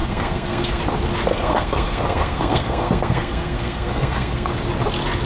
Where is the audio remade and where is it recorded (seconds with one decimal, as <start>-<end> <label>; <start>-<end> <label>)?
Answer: 0.0-0.8 remade; 0.8-1.3 recorded; 1.3-4.5 remade; 4.5-5.3 recorded